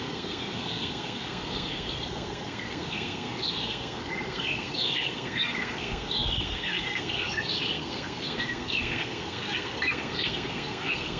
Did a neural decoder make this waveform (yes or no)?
yes